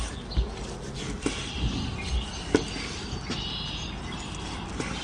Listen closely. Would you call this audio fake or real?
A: real